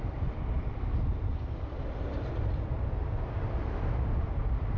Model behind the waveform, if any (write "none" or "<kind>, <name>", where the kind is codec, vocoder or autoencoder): none